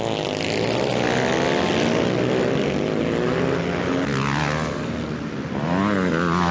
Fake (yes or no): no